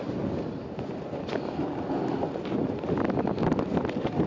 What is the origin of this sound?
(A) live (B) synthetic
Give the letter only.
A